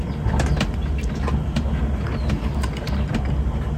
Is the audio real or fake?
real